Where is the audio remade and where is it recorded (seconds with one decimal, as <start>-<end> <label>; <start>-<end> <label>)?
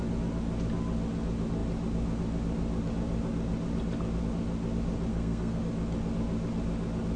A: 0.0-5.1 recorded; 5.1-5.6 remade; 5.6-7.2 recorded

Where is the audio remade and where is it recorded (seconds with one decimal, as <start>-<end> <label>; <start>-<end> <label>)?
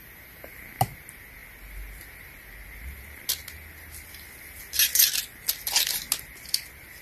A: 0.0-7.0 recorded